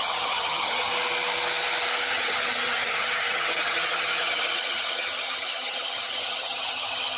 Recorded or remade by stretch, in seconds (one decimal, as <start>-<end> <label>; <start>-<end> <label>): 0.0-0.9 remade; 0.9-2.1 recorded; 2.1-7.2 remade